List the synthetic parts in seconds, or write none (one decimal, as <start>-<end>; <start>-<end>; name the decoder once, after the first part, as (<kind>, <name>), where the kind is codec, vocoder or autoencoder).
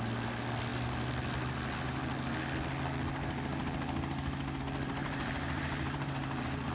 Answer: 5.0-6.7 (vocoder, BigVGAN v2)